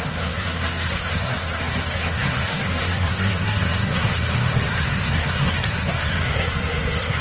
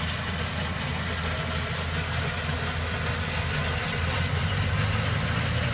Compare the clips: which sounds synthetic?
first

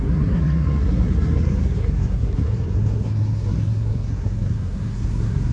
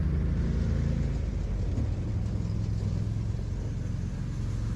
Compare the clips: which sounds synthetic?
first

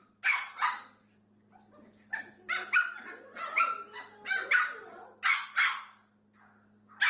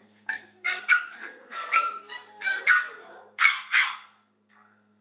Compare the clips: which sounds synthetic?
second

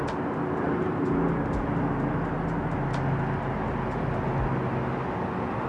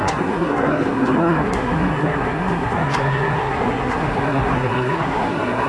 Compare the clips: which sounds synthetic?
second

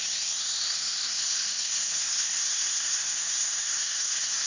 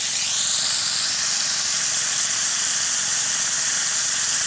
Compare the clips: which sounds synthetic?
first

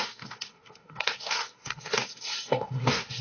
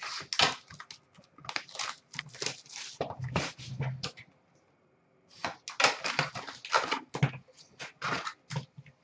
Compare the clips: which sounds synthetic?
first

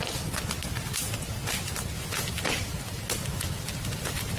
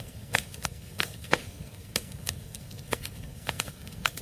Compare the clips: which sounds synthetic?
second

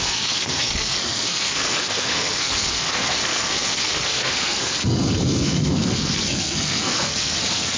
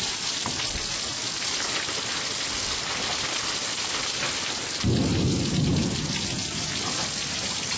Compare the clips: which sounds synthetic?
first